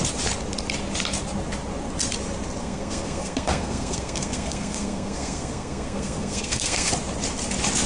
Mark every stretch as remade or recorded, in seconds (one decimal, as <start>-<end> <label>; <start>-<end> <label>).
0.0-2.6 recorded; 2.6-6.9 remade; 6.9-7.9 recorded